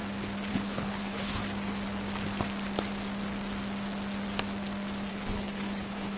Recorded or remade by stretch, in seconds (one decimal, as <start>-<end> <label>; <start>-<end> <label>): 0.0-0.5 recorded; 0.5-1.4 remade; 1.4-5.1 recorded; 5.1-6.2 remade

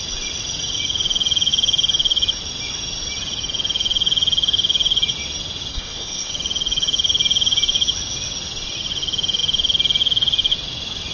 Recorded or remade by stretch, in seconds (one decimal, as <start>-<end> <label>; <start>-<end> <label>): 0.0-5.7 recorded; 5.7-6.3 remade; 6.3-11.1 recorded

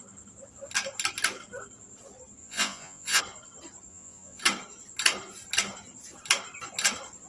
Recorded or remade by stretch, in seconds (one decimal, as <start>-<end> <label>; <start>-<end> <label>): 0.0-2.4 recorded; 2.4-3.2 remade; 3.2-3.9 recorded; 3.9-4.4 remade; 4.4-7.3 recorded

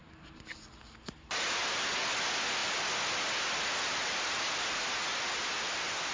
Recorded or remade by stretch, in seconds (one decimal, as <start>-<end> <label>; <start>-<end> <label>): 0.0-6.1 recorded

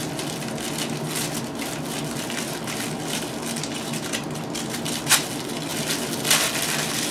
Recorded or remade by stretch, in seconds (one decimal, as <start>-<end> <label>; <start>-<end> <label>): 0.0-7.1 recorded

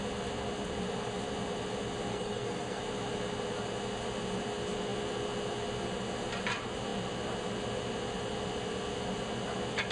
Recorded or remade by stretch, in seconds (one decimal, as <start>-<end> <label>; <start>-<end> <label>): 0.0-2.1 recorded; 2.1-2.8 remade; 2.8-9.9 recorded